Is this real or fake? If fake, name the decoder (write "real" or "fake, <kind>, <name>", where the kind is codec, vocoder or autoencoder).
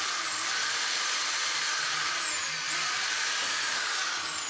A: real